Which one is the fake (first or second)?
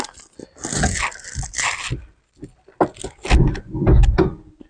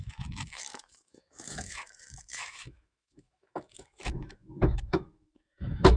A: second